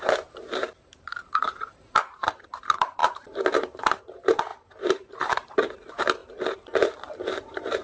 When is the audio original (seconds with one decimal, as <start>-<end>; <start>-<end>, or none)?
6.2-7.3